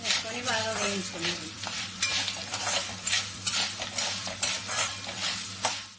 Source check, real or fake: fake